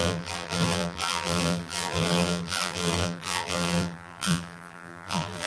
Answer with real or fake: fake